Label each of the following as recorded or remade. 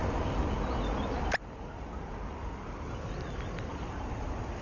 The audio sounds recorded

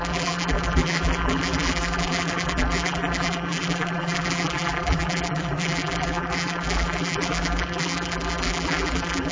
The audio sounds remade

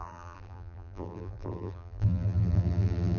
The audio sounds remade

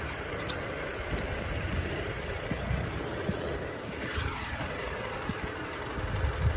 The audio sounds remade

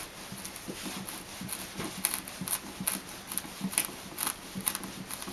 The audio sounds recorded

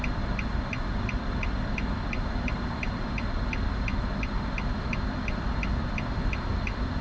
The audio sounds recorded